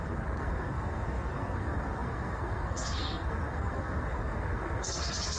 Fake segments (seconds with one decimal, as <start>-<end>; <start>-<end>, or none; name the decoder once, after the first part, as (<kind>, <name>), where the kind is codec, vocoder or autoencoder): 0.0-5.4 (codec, SNAC)